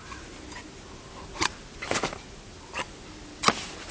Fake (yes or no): no